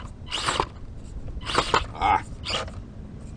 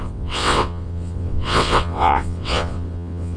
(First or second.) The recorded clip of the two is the first